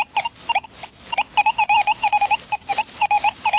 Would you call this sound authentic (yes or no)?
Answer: yes